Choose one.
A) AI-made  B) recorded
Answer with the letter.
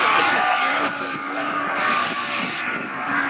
A